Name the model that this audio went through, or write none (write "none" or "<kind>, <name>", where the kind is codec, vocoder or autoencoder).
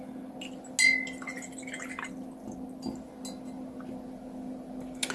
none